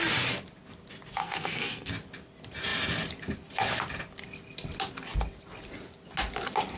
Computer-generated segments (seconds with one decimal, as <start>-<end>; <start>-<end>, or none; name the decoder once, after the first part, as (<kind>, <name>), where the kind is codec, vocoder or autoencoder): 1.2-1.9 (codec, SNAC)